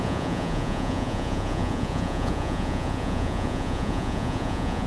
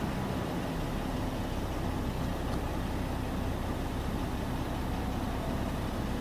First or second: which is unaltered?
second